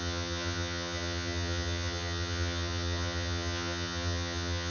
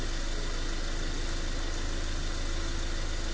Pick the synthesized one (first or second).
first